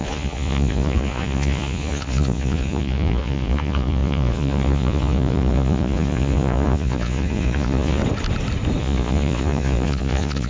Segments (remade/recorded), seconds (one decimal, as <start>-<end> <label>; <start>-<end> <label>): 0.0-8.0 remade; 8.0-8.8 recorded; 8.8-10.5 remade